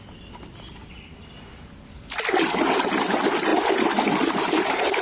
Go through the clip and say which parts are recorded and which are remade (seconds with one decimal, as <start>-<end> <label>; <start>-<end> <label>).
0.0-5.0 recorded